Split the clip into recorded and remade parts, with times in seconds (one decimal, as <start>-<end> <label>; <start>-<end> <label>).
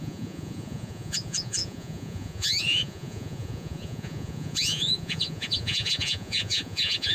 0.0-7.1 remade